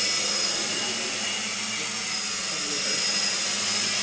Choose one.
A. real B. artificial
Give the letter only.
A